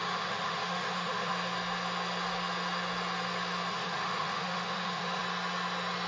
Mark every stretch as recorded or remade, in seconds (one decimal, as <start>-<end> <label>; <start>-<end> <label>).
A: 0.0-1.3 remade; 1.3-3.7 recorded; 3.7-5.2 remade; 5.2-6.1 recorded